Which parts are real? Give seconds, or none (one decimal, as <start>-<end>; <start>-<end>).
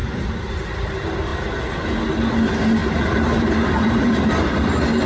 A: 0.5-2.8